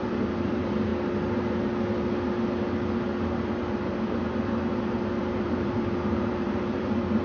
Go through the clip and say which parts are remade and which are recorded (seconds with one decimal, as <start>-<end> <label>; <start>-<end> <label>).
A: 0.0-0.9 remade; 0.9-5.2 recorded; 5.2-7.2 remade